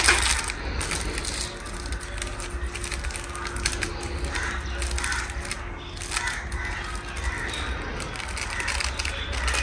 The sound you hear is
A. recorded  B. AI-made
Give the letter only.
A